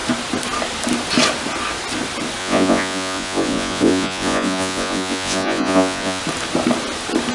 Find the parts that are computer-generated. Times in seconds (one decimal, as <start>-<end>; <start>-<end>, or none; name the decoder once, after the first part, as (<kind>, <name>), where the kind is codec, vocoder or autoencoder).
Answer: 2.4-6.2 (vocoder, Vocos)